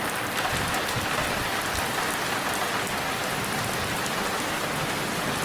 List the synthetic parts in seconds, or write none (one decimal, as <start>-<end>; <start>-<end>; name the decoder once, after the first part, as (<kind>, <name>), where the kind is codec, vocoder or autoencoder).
none